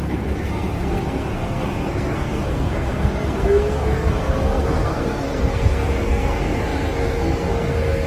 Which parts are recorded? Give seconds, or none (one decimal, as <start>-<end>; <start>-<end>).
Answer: none